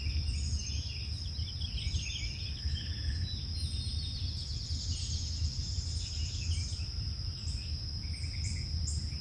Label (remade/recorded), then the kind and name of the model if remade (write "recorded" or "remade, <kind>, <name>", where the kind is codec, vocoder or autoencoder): recorded